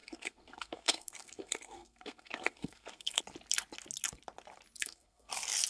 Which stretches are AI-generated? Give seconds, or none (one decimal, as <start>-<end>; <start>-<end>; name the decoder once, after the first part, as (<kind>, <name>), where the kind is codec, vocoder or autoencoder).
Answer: 0.0-3.2 (codec, SNAC); 4.8-5.3